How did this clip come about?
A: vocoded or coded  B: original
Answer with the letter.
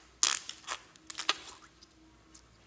B